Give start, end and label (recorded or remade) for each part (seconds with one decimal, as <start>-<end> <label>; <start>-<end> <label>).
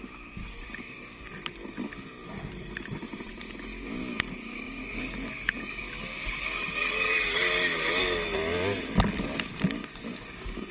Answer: 0.0-0.4 recorded; 0.4-1.2 remade; 1.2-4.0 recorded; 4.0-8.0 remade; 8.0-9.8 recorded; 9.8-10.7 remade